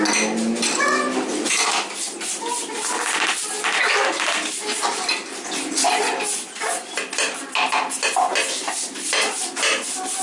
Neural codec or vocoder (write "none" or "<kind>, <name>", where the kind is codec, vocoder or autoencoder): none